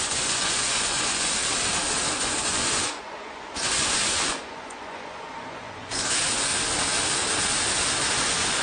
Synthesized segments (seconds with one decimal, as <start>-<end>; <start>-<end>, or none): 0.0-1.4; 2.1-6.5; 8.1-8.6